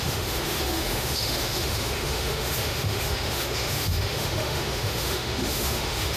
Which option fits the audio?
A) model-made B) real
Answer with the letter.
A